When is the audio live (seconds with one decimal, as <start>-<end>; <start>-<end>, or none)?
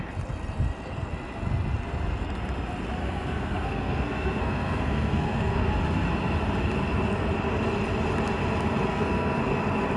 0.0-3.0; 5.7-8.9; 9.4-10.0